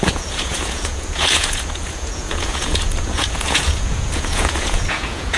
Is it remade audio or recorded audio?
remade